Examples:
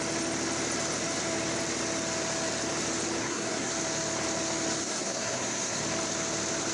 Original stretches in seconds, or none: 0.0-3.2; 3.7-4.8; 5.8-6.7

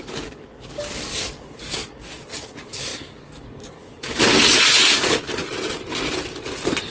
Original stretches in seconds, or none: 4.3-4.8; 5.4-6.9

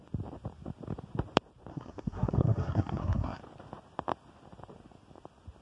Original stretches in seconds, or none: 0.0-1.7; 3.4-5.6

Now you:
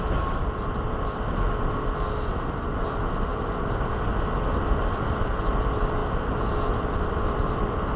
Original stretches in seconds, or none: none